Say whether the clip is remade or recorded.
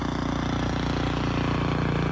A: recorded